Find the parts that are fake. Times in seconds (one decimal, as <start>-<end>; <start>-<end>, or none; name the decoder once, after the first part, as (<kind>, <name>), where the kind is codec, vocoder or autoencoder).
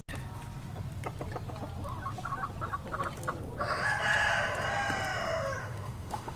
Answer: 5.6-6.4 (autoencoder, DAC-VAE)